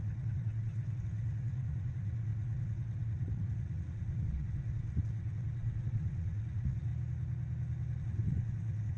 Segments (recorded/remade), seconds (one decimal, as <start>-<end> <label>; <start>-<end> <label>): 0.0-6.9 remade; 6.9-8.0 recorded; 8.0-9.0 remade